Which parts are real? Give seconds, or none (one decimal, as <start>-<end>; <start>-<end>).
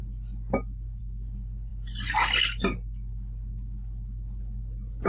0.0-5.1